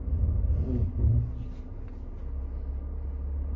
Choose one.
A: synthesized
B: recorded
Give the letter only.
B